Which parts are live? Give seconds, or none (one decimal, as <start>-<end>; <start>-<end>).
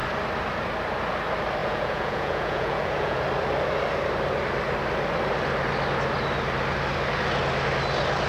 0.0-1.6; 3.2-8.3